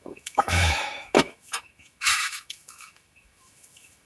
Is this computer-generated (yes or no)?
yes